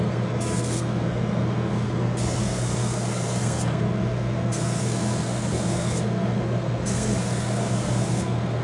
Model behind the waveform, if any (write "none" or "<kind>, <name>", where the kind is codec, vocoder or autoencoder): codec, SNAC